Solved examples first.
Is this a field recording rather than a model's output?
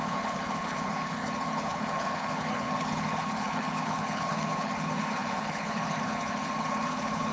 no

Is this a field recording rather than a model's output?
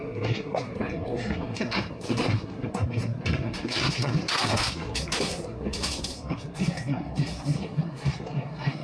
no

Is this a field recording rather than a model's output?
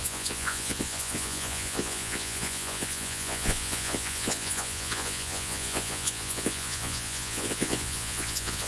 no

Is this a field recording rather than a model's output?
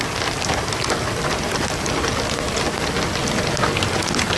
yes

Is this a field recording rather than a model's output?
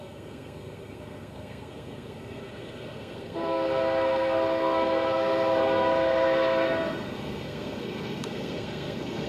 no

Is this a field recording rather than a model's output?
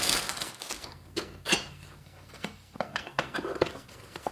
no